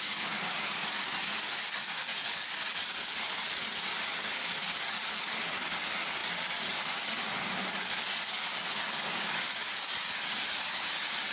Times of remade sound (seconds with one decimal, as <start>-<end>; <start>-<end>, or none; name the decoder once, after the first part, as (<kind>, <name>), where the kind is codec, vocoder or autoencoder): 0.0-9.9 (codec, DAC)